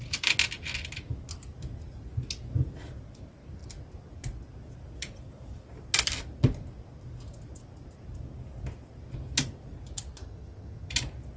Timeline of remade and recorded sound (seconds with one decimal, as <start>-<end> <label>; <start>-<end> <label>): 0.0-10.2 recorded; 10.2-10.9 remade; 10.9-11.4 recorded